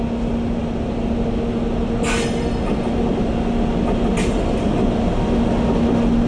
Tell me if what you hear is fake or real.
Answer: real